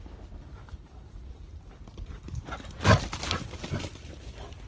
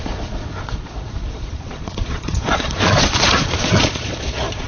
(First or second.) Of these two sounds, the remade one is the second